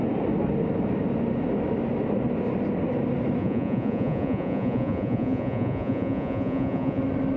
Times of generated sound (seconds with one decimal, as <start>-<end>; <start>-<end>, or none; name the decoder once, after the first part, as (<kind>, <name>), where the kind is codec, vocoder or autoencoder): 3.4-7.0 (vocoder, Vocos)